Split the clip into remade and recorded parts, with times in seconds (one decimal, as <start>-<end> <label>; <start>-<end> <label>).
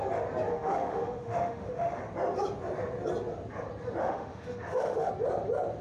0.0-0.5 recorded; 0.5-2.0 remade; 2.0-4.0 recorded; 4.0-5.1 remade; 5.1-5.8 recorded